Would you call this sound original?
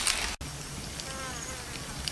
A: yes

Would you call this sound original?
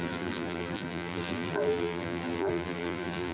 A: no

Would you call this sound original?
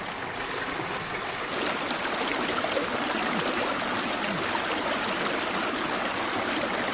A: yes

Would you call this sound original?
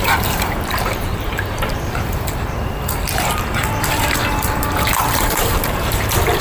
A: no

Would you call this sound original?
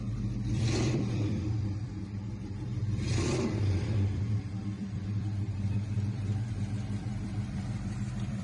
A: no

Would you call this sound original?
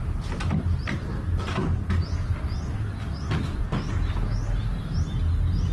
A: yes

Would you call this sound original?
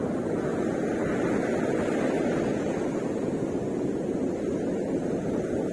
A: yes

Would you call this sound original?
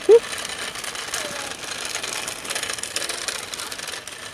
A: yes